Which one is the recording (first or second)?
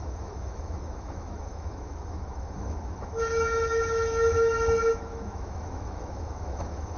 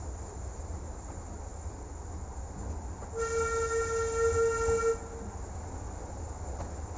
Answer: second